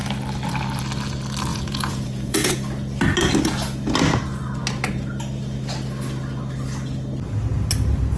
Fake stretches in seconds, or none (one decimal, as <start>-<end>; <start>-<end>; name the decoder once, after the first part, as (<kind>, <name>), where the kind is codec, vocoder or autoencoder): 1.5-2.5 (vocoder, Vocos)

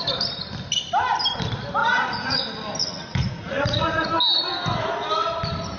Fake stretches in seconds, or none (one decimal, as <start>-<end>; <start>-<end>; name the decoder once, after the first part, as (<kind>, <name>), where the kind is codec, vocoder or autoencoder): 1.8-2.4 (vocoder, Vocos); 2.8-4.1

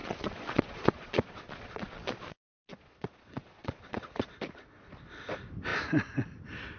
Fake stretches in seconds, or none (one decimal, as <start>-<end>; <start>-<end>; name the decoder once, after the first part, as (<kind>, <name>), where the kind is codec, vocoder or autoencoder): 0.0-4.1 (vocoder, Vocos)

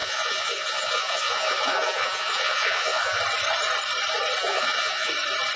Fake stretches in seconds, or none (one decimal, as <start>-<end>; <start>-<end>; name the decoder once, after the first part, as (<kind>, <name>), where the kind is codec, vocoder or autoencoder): 0.0-3.2 (vocoder, Vocos); 4.4-5.1

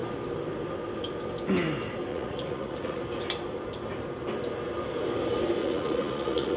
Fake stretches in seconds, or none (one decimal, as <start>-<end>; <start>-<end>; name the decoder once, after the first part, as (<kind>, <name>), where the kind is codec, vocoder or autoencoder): 2.1-3.0 (vocoder, Vocos); 5.6-6.6

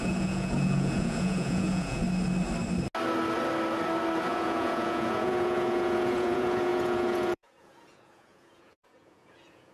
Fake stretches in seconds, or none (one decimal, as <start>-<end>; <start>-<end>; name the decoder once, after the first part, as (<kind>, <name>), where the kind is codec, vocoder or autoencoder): 0.0-2.0 (vocoder, Vocos); 4.3-9.7

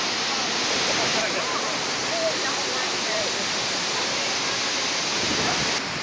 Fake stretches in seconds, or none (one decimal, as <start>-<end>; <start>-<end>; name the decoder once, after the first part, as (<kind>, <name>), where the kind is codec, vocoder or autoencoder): none